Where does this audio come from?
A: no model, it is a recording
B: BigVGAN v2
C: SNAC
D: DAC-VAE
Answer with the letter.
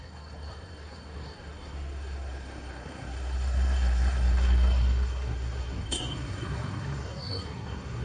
C